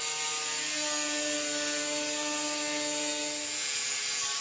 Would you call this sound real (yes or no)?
yes